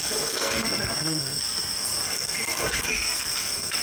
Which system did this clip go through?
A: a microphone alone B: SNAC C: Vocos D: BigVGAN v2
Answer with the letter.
B